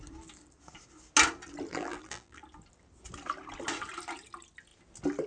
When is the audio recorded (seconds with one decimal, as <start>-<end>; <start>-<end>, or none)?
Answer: 0.0-1.7; 2.4-5.3